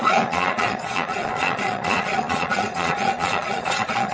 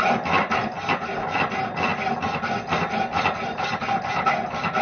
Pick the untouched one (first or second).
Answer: second